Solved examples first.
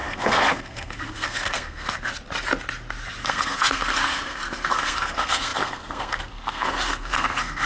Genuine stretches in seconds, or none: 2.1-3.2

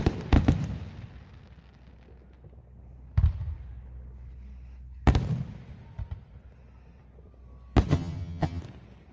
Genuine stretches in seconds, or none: 0.0-7.9; 8.6-9.1